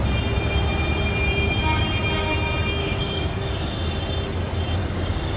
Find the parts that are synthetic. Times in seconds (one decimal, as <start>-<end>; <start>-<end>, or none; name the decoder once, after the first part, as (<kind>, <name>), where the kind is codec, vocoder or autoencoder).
2.8-3.9 (codec, DAC); 4.8-5.4